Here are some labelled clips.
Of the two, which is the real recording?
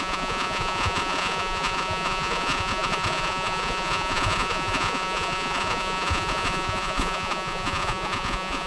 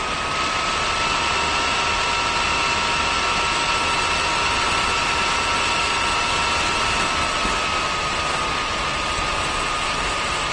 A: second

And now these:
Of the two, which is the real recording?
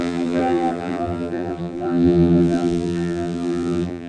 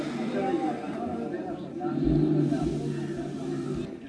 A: second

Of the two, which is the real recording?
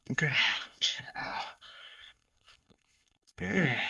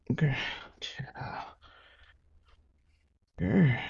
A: second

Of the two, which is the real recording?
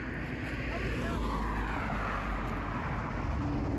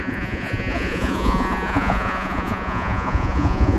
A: first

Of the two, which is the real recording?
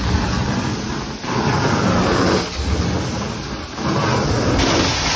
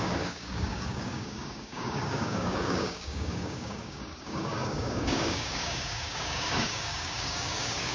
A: first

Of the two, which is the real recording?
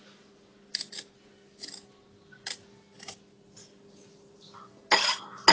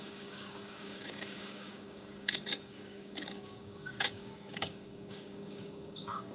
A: first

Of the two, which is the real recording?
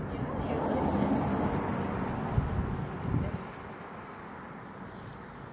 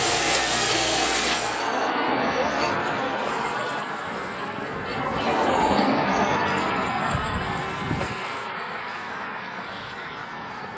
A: first